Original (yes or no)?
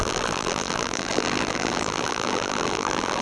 no